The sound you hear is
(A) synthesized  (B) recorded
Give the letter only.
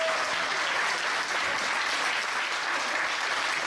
B